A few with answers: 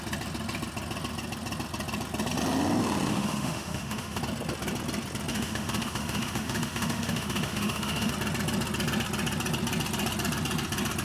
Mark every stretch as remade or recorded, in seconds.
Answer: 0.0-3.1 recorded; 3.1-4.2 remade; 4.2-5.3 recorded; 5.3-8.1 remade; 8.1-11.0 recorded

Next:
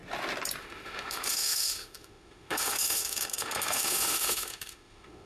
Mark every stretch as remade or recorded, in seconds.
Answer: 0.0-0.6 recorded; 0.6-5.3 remade

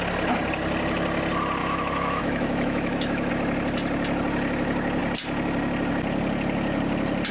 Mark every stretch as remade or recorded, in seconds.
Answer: 0.0-1.6 recorded; 1.6-3.3 remade; 3.3-7.3 recorded

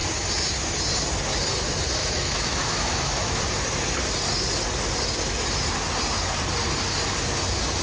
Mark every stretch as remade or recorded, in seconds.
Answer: 0.0-2.0 recorded; 2.0-3.4 remade; 3.4-7.8 recorded

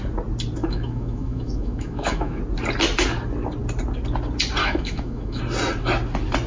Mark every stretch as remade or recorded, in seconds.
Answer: 0.0-0.6 recorded; 0.6-2.4 remade; 2.4-4.6 recorded; 4.6-5.4 remade; 5.4-6.5 recorded

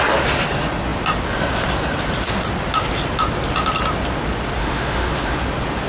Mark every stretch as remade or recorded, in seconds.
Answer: 0.0-4.6 recorded; 4.6-5.4 remade; 5.4-5.9 recorded

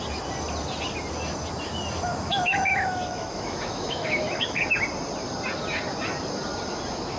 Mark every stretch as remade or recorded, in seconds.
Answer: 0.0-2.3 recorded; 2.3-4.6 remade; 4.6-7.2 recorded

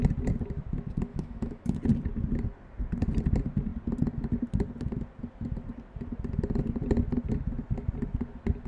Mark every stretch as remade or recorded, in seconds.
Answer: 0.0-1.1 recorded; 1.1-1.8 remade; 1.8-8.7 recorded